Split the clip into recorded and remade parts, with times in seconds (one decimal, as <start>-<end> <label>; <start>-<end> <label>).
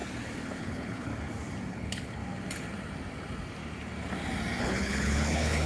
0.0-0.6 recorded; 0.6-1.1 remade; 1.1-1.7 recorded; 1.7-2.2 remade; 2.2-4.6 recorded; 4.6-5.7 remade